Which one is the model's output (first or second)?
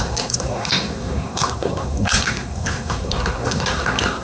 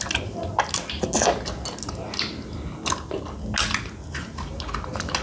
first